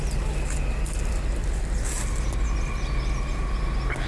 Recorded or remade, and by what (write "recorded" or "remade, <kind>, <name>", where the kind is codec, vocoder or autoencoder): recorded